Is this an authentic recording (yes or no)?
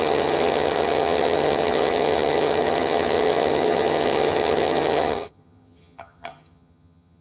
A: no